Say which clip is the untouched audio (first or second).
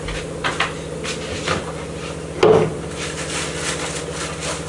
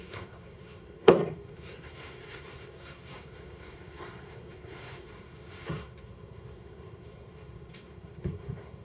first